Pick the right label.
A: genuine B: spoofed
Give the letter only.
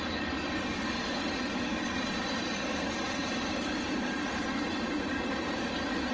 B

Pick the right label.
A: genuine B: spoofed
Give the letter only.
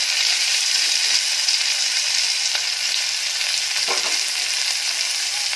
B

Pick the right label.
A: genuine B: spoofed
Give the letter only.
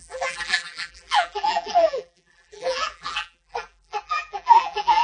B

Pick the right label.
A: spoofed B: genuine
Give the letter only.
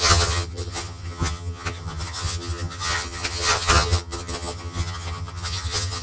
A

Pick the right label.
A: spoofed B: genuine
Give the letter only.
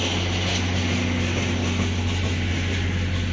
B